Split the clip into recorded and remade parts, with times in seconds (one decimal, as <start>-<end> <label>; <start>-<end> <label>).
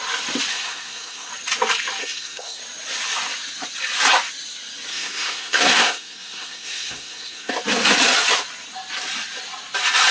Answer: 0.0-0.5 recorded; 0.5-1.3 remade; 1.3-2.0 recorded; 2.0-2.6 remade; 2.6-4.9 recorded; 4.9-7.5 remade; 7.5-10.1 recorded